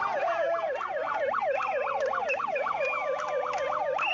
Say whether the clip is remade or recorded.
recorded